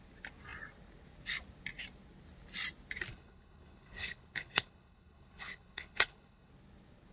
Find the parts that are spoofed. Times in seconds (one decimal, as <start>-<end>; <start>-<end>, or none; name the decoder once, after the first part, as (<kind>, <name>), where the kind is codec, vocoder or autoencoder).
3.1-6.5 (codec, HILCodec)